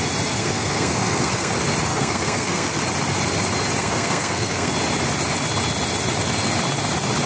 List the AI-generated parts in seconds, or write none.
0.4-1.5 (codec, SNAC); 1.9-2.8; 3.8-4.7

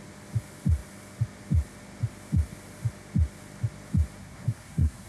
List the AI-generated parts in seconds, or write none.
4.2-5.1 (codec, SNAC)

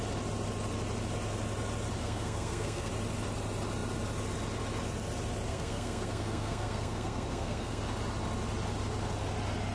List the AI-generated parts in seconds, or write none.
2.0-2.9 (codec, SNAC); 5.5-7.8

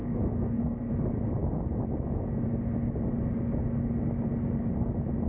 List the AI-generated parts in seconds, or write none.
0.0-0.9 (codec, SNAC)

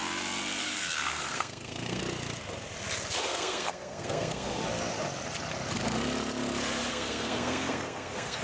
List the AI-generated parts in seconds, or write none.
0.6-2.0 (codec, SNAC); 3.2-4.6; 6.9-8.4

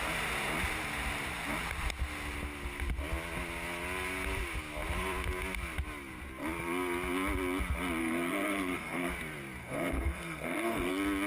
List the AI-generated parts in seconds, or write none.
8.0-9.1 (codec, SNAC); 9.6-10.9

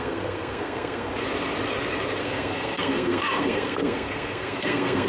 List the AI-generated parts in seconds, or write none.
0.0-1.1 (codec, SNAC); 2.2-5.1